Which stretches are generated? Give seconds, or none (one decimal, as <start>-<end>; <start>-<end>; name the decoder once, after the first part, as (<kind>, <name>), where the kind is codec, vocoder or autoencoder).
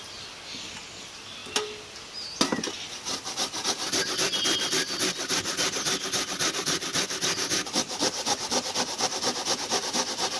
0.0-1.4 (vocoder, BigVGAN v2); 2.7-10.4